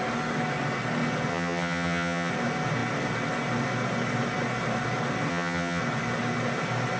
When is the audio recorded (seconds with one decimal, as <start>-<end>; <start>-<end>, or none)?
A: 0.0-1.3; 2.3-5.3; 5.8-7.0